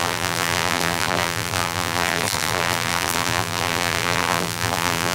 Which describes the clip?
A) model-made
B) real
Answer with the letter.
A